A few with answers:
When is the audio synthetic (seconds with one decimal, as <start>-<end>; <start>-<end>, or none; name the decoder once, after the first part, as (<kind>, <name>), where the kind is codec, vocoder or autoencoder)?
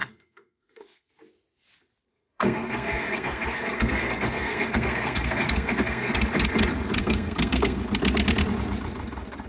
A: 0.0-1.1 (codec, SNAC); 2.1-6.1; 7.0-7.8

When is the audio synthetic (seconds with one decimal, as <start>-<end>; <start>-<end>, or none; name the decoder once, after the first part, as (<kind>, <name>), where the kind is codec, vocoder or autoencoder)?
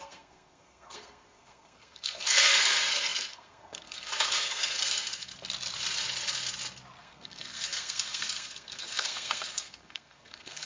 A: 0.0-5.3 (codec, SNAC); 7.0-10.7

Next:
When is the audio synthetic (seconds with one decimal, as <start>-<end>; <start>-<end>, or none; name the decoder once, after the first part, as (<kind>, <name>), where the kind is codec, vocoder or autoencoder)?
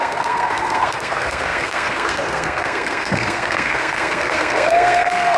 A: 0.0-5.4 (codec, SNAC)